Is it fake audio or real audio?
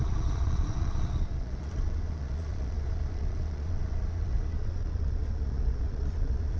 fake